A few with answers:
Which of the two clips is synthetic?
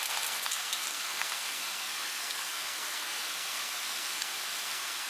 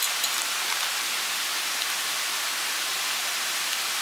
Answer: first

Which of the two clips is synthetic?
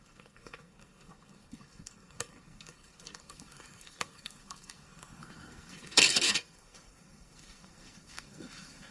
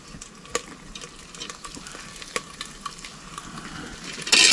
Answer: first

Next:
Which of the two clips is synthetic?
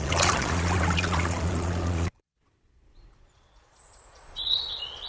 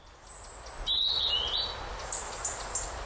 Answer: first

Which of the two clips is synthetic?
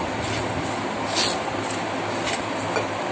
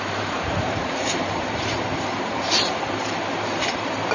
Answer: second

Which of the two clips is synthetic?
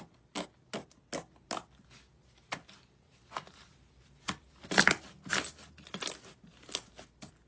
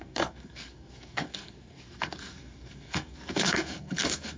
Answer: second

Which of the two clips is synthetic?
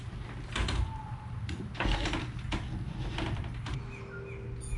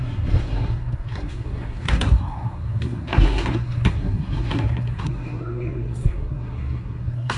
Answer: second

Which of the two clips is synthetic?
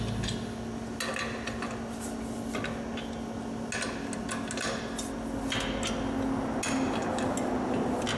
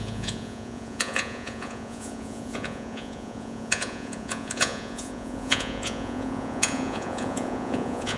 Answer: second